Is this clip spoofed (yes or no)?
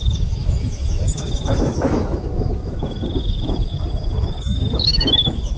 yes